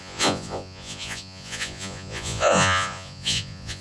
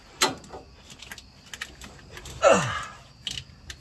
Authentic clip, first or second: second